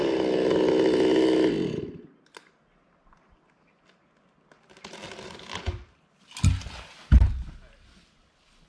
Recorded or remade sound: recorded